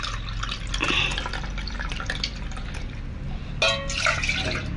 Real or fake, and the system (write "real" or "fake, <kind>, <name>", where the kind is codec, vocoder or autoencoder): real